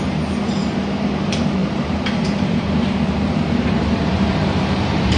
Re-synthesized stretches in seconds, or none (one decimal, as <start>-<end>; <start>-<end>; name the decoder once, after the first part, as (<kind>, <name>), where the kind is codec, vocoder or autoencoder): 0.0-5.2 (vocoder, BigVGAN v2)